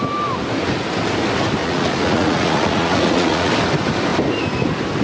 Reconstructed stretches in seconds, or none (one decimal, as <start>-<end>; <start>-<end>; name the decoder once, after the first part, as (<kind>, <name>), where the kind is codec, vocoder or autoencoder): 1.6-3.5 (vocoder, Vocos)